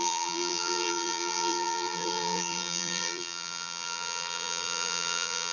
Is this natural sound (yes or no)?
no